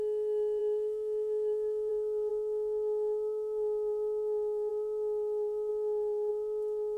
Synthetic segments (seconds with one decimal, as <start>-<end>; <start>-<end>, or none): 0.6-1.9; 2.3-4.7